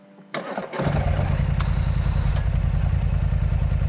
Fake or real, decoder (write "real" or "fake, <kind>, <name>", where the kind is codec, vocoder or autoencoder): real